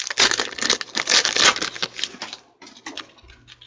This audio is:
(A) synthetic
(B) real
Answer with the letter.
B